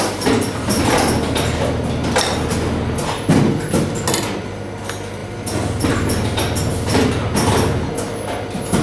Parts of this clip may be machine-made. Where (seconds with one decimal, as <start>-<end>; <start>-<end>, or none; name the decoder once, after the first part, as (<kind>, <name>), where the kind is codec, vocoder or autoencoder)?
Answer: none